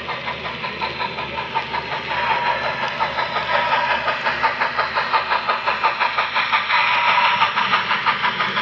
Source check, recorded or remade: recorded